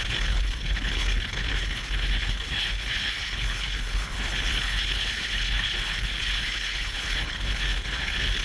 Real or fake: fake